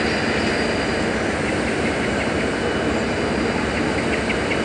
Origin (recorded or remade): recorded